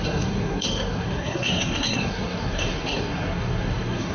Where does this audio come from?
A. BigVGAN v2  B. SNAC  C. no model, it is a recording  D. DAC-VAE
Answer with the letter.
B